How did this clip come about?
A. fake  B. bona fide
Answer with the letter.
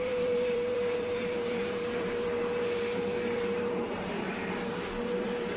A